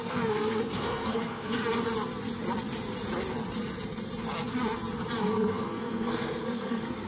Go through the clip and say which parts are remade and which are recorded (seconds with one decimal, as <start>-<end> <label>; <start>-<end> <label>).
0.0-1.6 remade; 1.6-5.2 recorded; 5.2-7.1 remade